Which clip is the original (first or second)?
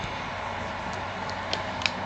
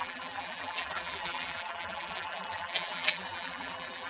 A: first